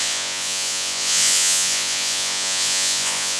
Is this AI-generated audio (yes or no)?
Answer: yes